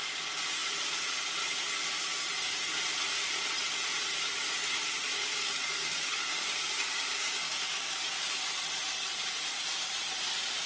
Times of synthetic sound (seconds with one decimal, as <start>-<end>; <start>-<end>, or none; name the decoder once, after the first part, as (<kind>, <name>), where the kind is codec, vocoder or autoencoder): 5.2-8.4 (codec, DAC)